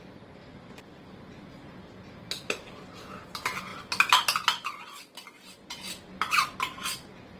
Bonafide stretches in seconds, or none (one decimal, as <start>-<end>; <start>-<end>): 0.0-7.4